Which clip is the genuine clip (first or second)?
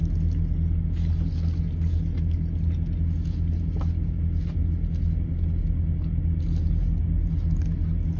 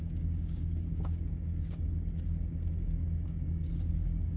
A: first